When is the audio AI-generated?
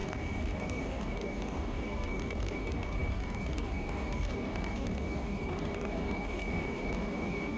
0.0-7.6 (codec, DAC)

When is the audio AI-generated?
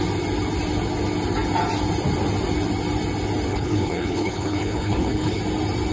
3.5-5.4 (codec, HILCodec)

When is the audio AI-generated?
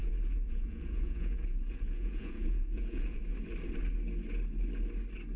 0.0-3.2 (vocoder, Vocos)